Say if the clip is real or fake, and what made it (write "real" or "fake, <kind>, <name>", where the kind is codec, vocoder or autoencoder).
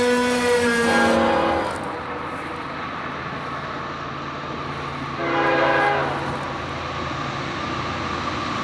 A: real